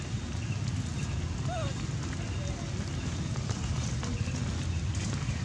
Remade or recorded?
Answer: recorded